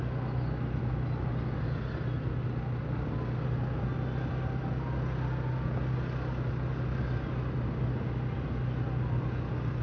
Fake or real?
real